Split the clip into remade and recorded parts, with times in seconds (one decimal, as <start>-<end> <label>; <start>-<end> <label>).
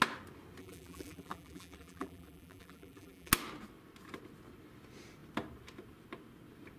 0.0-0.6 recorded; 0.6-3.3 remade; 3.3-6.8 recorded